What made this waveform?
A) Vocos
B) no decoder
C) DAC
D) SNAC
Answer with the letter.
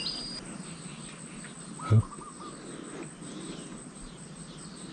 B